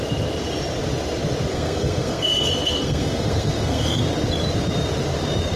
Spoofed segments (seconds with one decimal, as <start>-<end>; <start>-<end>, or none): 1.5-4.0